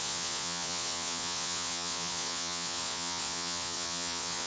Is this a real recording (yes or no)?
no